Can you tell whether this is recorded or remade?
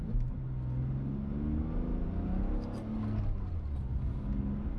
recorded